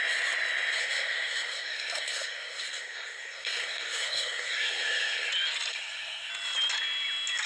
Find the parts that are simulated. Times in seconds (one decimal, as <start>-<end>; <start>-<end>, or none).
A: 0.8-5.3; 5.7-6.3